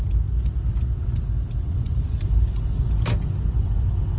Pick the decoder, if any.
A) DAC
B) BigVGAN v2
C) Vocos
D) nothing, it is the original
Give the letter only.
D